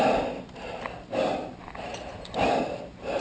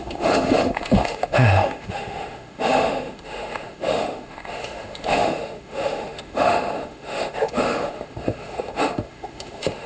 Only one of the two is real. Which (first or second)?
first